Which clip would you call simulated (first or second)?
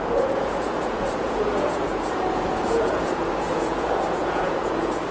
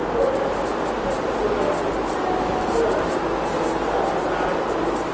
first